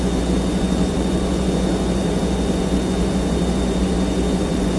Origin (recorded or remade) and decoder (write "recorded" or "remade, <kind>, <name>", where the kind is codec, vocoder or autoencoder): remade, vocoder, Vocos